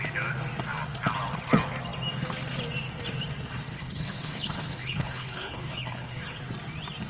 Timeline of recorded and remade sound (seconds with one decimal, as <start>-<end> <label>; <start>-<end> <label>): 0.0-3.7 recorded; 3.7-6.4 remade; 6.4-7.1 recorded